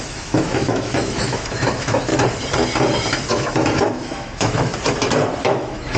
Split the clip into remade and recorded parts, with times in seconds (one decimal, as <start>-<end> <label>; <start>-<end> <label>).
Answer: 0.0-2.1 remade; 2.1-3.3 recorded; 3.3-4.7 remade; 4.7-5.4 recorded; 5.4-6.0 remade

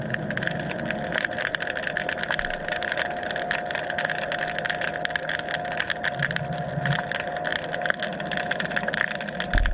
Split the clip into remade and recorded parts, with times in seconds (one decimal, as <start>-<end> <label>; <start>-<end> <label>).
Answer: 0.0-9.7 recorded

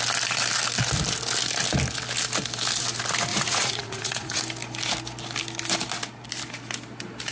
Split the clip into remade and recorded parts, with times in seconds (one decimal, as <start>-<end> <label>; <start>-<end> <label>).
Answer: 0.0-3.3 recorded; 3.3-4.4 remade; 4.4-7.3 recorded